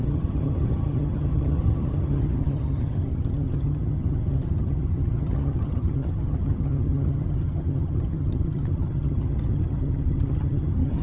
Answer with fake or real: fake